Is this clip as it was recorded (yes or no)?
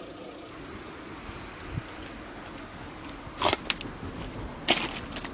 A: yes